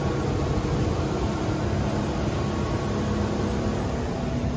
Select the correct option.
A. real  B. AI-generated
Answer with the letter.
A